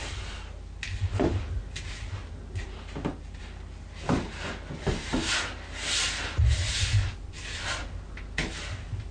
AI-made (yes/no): no